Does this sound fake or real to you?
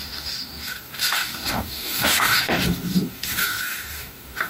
fake